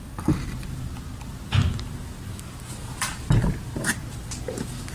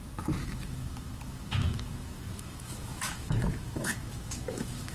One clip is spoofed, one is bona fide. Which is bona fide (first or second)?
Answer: first